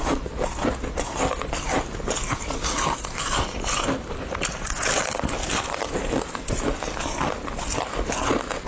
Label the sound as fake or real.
real